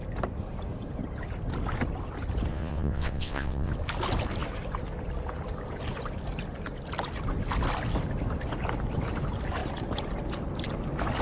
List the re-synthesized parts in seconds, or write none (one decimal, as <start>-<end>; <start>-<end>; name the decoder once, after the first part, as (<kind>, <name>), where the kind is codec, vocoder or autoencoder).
2.5-3.7 (vocoder, WaveNeXt)